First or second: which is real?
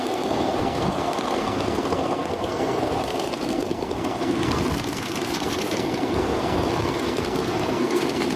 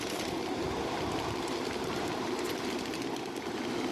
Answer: second